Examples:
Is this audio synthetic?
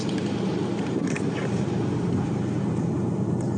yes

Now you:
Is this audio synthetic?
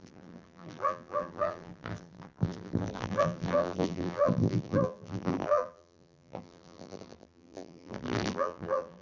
yes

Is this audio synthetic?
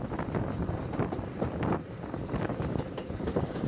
no